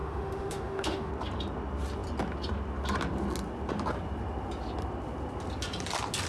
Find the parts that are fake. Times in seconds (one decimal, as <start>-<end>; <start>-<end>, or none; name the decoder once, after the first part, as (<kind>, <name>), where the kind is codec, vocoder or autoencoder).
0.0-1.1 (autoencoder, DAC-VAE)